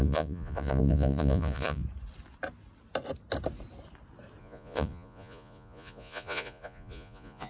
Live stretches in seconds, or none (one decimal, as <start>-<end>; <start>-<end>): 1.8-4.4